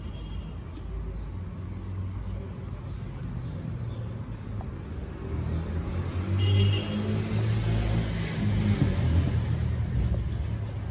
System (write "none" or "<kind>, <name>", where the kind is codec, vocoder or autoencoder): none